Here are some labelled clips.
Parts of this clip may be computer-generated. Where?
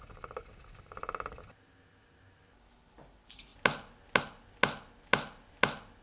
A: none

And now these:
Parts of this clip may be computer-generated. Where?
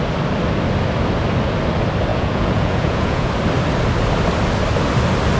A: 2.1-3.3 (vocoder, Vocos)